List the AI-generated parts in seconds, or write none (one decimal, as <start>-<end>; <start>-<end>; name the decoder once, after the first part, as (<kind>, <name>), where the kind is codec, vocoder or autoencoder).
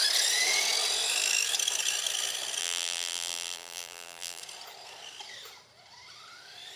2.6-4.4 (vocoder, BigVGAN v2)